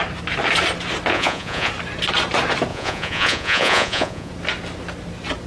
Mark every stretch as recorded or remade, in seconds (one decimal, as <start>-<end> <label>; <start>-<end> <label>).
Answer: 0.0-1.1 recorded; 1.1-1.7 remade; 1.7-2.7 recorded; 2.7-4.3 remade; 4.3-5.5 recorded